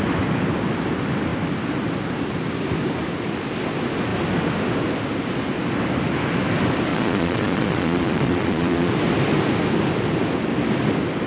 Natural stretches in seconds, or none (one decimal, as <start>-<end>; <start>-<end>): 0.0-6.9; 8.9-11.3